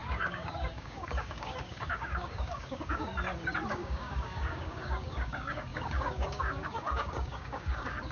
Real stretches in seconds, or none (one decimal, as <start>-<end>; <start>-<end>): 3.1-3.7